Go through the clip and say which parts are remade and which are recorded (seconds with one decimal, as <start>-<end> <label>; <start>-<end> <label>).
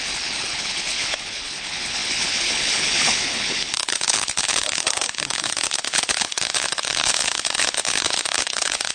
0.0-8.9 remade